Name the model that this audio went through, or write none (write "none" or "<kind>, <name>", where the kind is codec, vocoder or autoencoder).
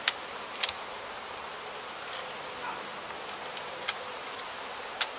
none